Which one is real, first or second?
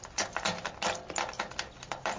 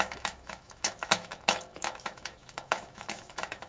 first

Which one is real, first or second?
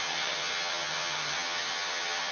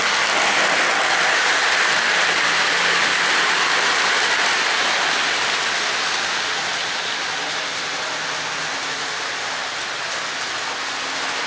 second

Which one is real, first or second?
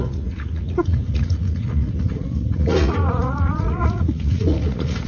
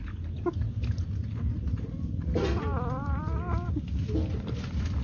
second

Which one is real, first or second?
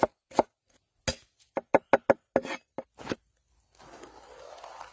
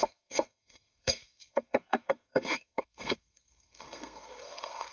first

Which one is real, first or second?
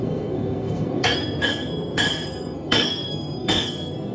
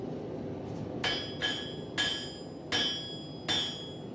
second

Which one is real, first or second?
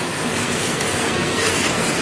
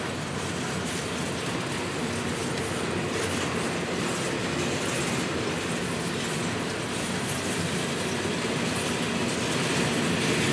second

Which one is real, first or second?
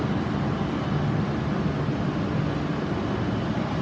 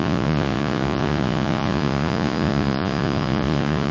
first